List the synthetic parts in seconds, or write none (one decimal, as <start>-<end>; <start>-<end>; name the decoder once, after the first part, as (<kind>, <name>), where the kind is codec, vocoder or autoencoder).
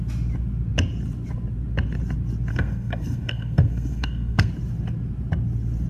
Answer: 2.5-4.5 (codec, SNAC)